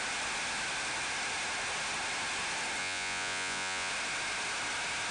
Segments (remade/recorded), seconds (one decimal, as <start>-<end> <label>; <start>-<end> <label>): 0.0-2.8 recorded; 2.8-3.9 remade; 3.9-5.1 recorded